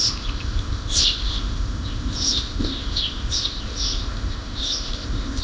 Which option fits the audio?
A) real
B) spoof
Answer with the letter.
B